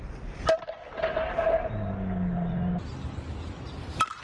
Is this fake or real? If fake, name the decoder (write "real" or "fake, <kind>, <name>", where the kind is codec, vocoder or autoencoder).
real